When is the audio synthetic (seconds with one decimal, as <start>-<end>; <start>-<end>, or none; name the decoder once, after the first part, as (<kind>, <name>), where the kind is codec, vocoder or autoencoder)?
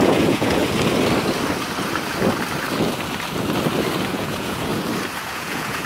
0.0-0.6 (vocoder, Vocos); 4.1-4.7; 5.2-5.9